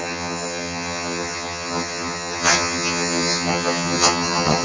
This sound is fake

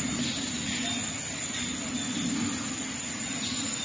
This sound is real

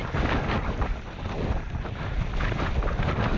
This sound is real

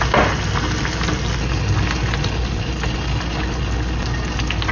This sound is real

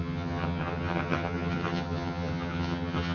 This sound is fake